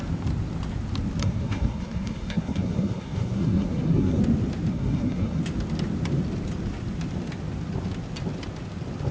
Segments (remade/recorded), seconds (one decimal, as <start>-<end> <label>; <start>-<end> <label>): 0.0-1.2 recorded; 1.2-4.2 remade; 4.2-4.7 recorded; 4.7-5.4 remade; 5.4-9.1 recorded